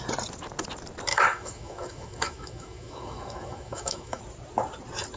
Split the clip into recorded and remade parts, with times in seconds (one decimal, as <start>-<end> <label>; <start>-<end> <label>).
0.0-1.1 recorded; 1.1-4.2 remade; 4.2-5.2 recorded